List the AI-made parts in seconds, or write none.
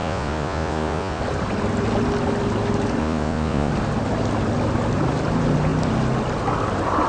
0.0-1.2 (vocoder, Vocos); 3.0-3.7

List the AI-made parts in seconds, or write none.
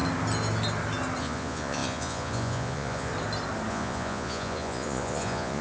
1.2-3.1 (vocoder, Vocos); 3.7-5.6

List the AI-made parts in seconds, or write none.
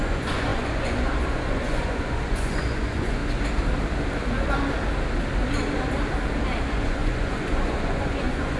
0.0-3.2 (vocoder, Vocos); 6.6-8.6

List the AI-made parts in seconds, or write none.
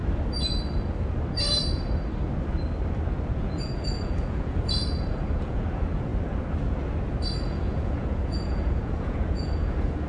3.3-6.1 (vocoder, Vocos); 7.4-10.1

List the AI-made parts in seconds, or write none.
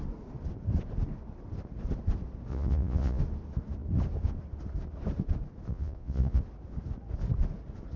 2.5-3.2 (vocoder, Vocos); 5.7-6.4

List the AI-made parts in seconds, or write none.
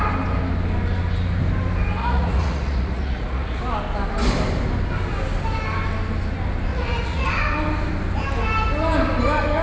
2.0-3.6 (vocoder, Vocos); 6.7-7.3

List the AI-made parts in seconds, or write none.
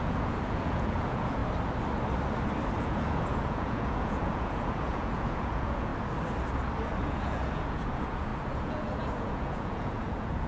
0.0-1.4 (vocoder, Vocos); 2.8-5.9; 7.0-10.5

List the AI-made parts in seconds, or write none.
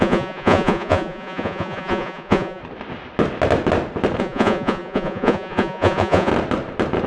0.0-2.6 (vocoder, Vocos); 4.2-6.3